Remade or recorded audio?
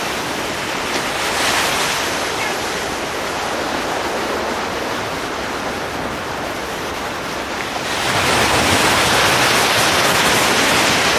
recorded